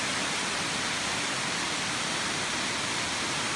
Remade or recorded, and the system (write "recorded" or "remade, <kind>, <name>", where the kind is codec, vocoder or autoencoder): recorded